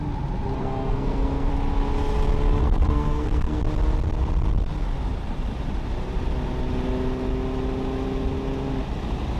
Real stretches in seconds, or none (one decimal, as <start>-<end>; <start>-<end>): 0.0-0.6; 1.5-2.6; 3.6-9.4